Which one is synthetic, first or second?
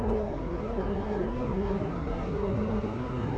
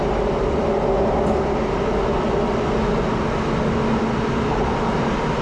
first